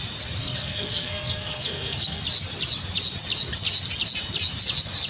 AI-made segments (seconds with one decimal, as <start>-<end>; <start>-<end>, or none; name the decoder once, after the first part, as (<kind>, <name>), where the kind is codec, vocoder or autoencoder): 0.4-2.2 (codec, SNAC)